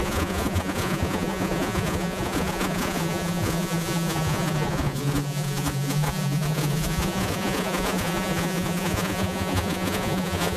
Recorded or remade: remade